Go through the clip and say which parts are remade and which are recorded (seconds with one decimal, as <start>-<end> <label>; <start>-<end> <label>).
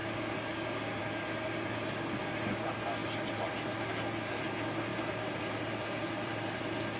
0.0-4.9 recorded; 4.9-6.6 remade; 6.6-7.0 recorded